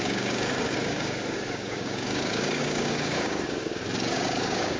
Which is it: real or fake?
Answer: fake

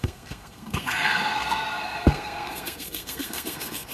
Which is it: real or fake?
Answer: fake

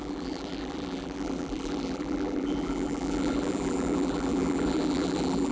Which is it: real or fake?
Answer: fake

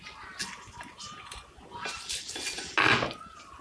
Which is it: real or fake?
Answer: real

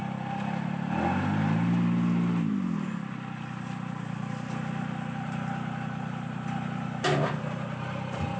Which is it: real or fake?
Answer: real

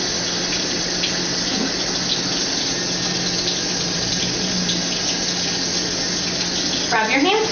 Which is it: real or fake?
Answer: real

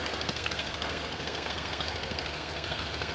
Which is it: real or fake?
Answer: fake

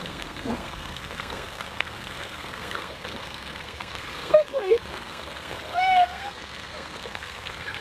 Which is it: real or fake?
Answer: fake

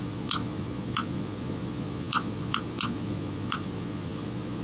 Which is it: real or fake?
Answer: fake